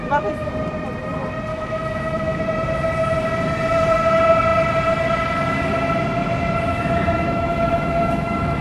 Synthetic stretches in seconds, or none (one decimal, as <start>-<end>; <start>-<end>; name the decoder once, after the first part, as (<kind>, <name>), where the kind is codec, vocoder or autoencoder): 0.0-0.5 (autoencoder, DAC-VAE); 1.5-2.4; 6.7-8.6